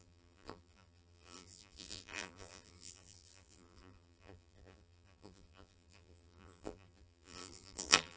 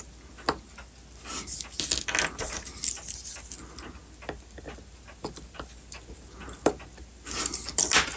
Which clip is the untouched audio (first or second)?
second